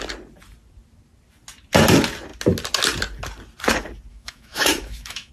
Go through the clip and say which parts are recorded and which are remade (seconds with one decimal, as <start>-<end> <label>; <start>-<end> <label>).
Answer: 0.0-4.1 recorded; 4.1-5.3 remade

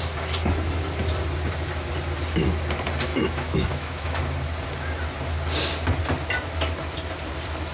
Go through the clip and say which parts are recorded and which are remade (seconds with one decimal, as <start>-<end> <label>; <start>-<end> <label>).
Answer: 0.0-3.1 recorded; 3.1-4.2 remade; 4.2-7.7 recorded

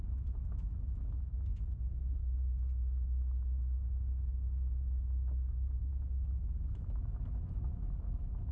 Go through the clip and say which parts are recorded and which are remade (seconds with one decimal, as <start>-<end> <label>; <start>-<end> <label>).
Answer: 0.0-1.5 remade; 1.5-5.9 recorded; 5.9-8.5 remade

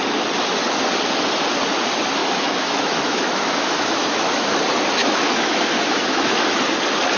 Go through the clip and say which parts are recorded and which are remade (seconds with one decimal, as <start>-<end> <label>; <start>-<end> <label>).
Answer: 0.0-2.2 recorded; 2.2-4.6 remade; 4.6-5.0 recorded; 5.0-6.6 remade; 6.6-7.2 recorded

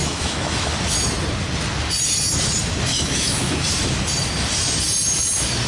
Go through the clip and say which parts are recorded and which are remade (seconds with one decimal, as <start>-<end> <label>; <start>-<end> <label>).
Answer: 0.0-0.7 remade; 0.7-2.9 recorded; 2.9-3.7 remade; 3.7-5.7 recorded

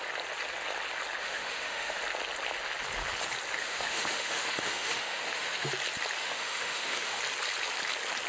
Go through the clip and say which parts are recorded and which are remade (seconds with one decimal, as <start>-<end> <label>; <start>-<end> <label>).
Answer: 0.0-1.2 recorded; 1.2-2.0 remade; 2.0-3.6 recorded; 3.6-5.7 remade; 5.7-6.2 recorded; 6.2-7.2 remade; 7.2-8.3 recorded

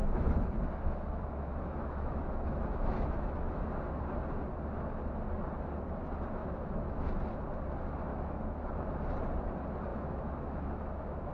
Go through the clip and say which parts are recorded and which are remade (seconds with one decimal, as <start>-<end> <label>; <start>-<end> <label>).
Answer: 0.0-3.7 remade; 3.7-6.4 recorded; 6.4-7.2 remade; 7.2-8.1 recorded; 8.1-8.7 remade; 8.7-9.9 recorded; 9.9-11.3 remade